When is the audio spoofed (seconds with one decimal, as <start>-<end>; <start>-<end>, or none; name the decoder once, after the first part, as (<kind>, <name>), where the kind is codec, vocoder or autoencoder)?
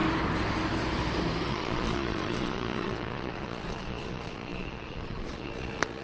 1.5-6.0 (vocoder, Vocos)